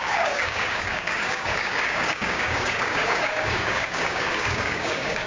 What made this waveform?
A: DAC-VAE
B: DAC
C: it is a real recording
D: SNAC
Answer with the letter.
B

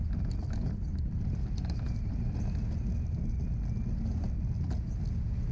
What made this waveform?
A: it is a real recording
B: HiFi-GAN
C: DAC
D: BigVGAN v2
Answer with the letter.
A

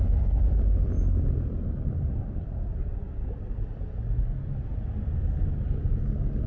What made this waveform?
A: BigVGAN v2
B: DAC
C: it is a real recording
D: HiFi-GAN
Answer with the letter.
C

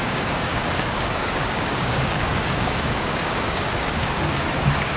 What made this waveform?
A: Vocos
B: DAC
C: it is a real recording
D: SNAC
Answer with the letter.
B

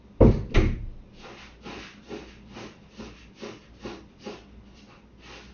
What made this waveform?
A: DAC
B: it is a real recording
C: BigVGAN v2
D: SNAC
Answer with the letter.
B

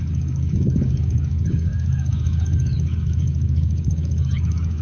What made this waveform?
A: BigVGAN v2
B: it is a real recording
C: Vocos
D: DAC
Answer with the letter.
D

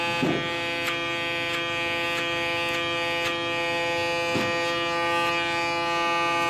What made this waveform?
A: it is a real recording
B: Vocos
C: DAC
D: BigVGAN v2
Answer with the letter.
A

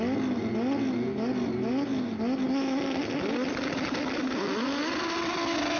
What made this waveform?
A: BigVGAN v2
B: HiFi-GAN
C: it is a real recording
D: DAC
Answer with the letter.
C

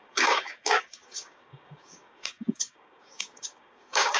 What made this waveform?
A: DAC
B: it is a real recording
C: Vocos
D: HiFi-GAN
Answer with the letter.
A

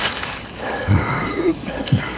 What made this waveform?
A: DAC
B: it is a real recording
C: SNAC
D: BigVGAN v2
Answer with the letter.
A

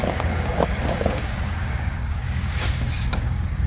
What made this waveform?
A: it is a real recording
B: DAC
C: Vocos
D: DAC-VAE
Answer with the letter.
B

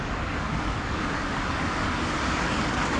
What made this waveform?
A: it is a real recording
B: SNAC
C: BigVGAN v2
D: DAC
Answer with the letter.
D